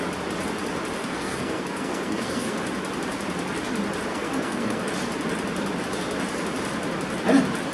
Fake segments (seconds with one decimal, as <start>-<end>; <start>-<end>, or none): 1.0-2.6; 4.1-4.9